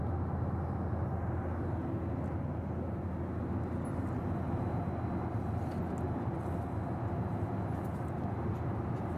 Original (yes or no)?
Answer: yes